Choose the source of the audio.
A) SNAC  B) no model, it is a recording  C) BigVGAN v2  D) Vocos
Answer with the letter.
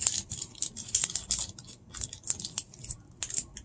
B